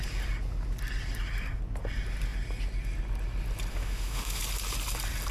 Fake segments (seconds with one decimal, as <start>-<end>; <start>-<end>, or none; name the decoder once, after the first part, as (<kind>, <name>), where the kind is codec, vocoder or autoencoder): 3.7-4.4 (autoencoder, DAC-VAE)